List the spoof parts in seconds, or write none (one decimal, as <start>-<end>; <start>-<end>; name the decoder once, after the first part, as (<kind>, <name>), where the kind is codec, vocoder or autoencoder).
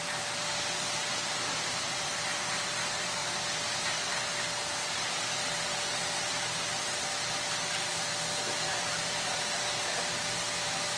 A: 0.0-3.2 (vocoder, BigVGAN v2); 4.7-7.9; 8.5-11.0